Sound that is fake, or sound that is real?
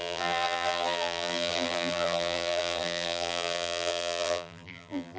fake